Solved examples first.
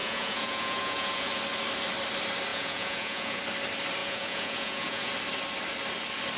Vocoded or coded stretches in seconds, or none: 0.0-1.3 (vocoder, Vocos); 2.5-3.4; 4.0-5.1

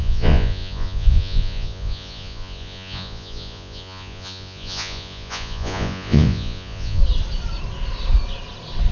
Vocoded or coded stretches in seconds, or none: 0.0-7.0 (vocoder, Vocos)

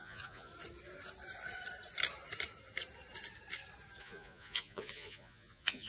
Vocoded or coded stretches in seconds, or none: 0.0-0.5 (vocoder, Vocos); 4.0-5.9

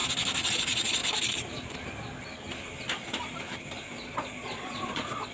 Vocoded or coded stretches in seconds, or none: 0.5-1.0 (vocoder, Vocos); 3.8-5.3

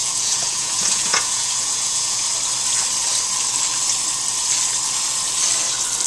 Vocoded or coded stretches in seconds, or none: 0.0-2.2 (vocoder, Vocos)

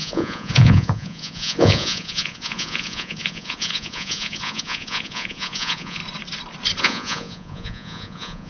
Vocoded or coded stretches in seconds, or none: 0.0-6.0 (vocoder, Vocos); 6.8-8.5

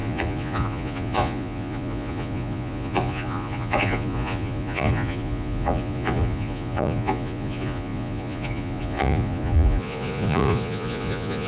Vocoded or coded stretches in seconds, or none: 0.0-11.5 (vocoder, Vocos)